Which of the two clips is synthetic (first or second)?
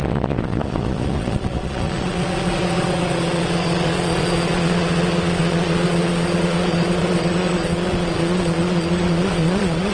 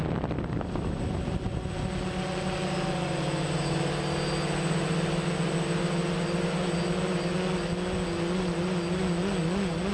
first